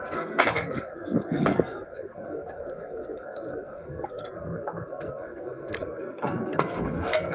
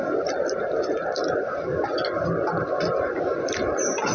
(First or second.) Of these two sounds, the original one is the second